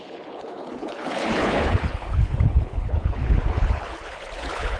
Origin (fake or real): fake